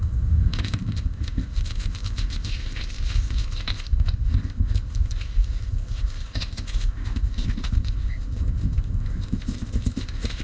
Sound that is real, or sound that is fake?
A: fake